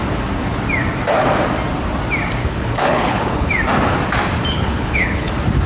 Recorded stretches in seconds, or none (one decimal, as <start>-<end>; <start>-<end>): 0.0-2.4; 3.5-4.5; 5.3-5.7